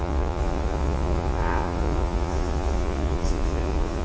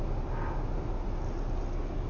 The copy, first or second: first